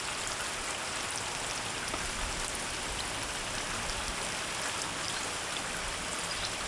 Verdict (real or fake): real